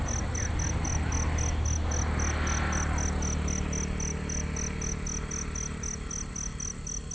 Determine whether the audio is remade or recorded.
recorded